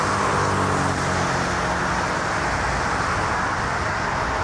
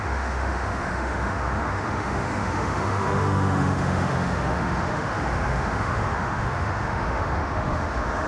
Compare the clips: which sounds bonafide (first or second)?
first